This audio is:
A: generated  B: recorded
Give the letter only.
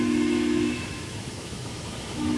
A